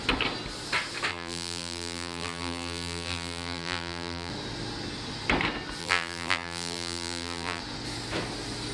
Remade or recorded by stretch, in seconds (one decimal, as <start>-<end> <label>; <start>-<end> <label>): 0.0-1.1 recorded; 1.1-4.3 remade; 4.3-5.8 recorded; 5.8-7.6 remade; 7.6-8.7 recorded